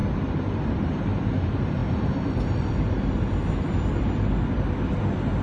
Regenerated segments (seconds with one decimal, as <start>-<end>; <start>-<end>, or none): 0.0-0.8; 1.8-5.0